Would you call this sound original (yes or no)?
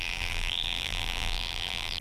no